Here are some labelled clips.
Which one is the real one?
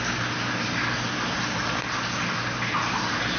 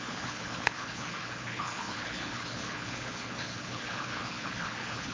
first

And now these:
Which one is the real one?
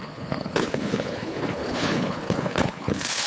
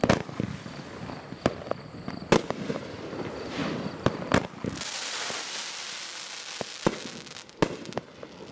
second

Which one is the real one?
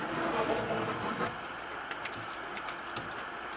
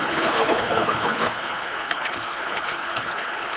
first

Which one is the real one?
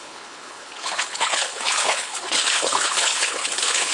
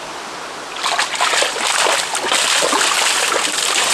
second